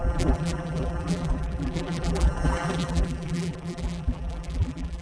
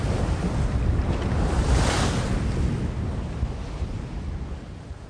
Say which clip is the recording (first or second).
second